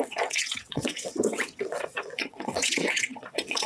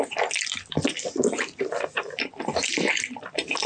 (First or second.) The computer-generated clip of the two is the first